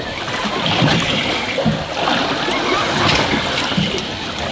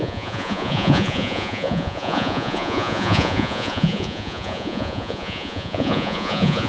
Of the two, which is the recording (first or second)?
first